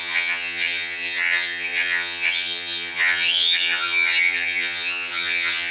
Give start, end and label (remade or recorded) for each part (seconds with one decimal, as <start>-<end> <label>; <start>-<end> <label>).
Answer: 0.0-5.7 remade